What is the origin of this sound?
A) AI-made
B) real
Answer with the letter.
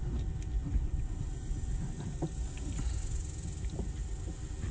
B